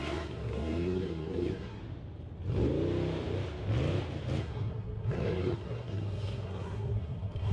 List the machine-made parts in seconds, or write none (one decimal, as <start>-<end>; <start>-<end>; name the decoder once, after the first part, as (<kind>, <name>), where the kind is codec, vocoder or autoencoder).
0.0-1.8 (codec, SNAC); 4.4-7.5